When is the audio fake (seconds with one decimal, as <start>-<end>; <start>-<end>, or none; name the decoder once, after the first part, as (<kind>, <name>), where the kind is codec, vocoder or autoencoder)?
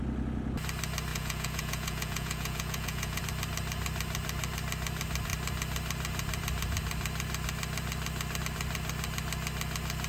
1.1-3.2 (vocoder, Vocos)